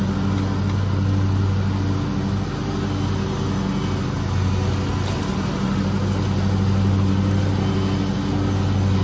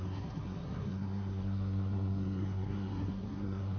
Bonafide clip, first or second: first